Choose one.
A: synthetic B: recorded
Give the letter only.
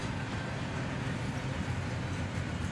B